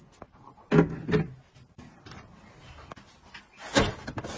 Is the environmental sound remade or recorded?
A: recorded